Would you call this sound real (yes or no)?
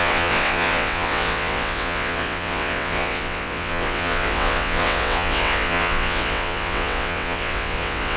no